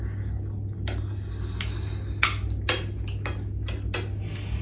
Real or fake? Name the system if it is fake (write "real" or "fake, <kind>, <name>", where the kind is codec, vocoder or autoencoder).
real